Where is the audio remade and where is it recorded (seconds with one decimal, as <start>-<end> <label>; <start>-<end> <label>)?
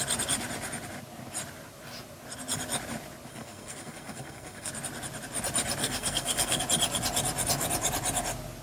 0.0-3.3 recorded; 3.3-4.7 remade; 4.7-5.8 recorded; 5.8-6.6 remade; 6.6-8.6 recorded